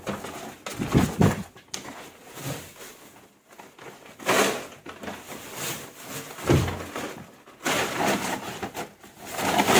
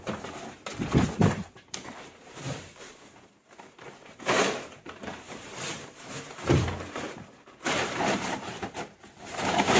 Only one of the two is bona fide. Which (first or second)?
first